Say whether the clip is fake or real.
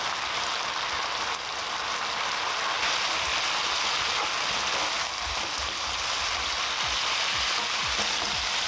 real